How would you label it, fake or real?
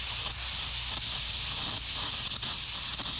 real